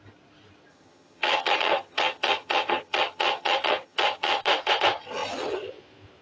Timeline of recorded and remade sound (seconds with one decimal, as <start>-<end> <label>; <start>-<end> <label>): 0.0-0.7 recorded; 0.7-4.4 remade; 4.4-6.2 recorded